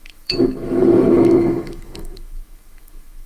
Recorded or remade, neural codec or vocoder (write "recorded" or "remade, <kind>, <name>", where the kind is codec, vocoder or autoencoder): remade, autoencoder, DAC-VAE